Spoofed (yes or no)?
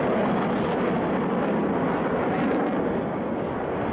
no